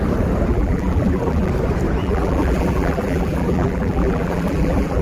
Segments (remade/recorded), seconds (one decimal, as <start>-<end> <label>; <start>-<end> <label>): 0.0-0.5 recorded; 0.5-1.5 remade; 1.5-2.0 recorded; 2.0-5.0 remade